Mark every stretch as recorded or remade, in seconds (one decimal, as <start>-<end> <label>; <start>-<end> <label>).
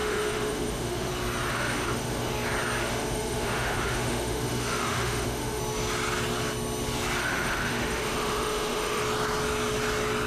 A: 0.0-1.1 remade; 1.1-1.5 recorded; 1.5-2.3 remade; 2.3-2.8 recorded; 2.8-5.6 remade; 5.6-7.2 recorded; 7.2-9.0 remade; 9.0-10.3 recorded